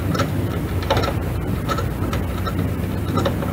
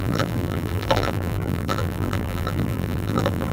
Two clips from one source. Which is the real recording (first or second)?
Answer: first